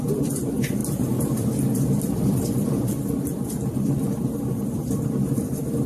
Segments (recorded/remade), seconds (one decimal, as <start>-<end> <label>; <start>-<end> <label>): 0.0-5.9 remade